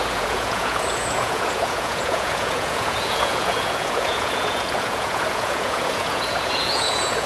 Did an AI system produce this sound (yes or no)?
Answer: yes